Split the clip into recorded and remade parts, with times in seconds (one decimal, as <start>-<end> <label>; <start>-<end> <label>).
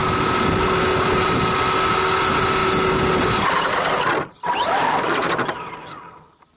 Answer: 0.0-6.6 recorded